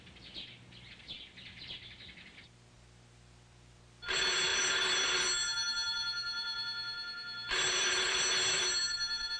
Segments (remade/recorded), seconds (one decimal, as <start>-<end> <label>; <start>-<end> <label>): 0.0-9.4 recorded